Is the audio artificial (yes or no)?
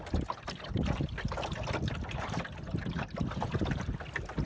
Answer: no